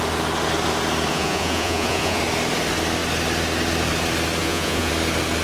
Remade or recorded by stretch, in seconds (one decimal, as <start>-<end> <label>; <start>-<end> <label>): 0.0-1.1 recorded; 1.1-2.2 remade; 2.2-4.4 recorded; 4.4-4.9 remade; 4.9-5.4 recorded